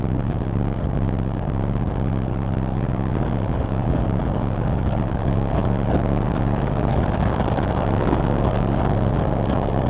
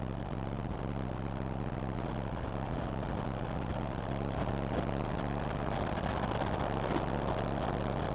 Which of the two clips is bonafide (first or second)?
second